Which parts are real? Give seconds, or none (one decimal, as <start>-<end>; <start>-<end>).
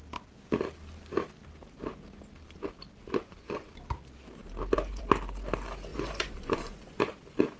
0.0-3.0; 3.7-5.9; 7.0-7.6